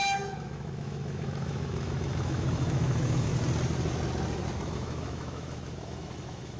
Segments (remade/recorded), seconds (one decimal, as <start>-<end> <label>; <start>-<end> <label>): 0.0-3.3 remade; 3.3-4.6 recorded; 4.6-6.6 remade